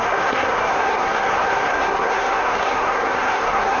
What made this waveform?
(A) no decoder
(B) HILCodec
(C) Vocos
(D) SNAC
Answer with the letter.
D